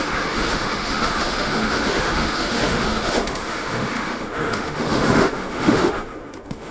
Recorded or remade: remade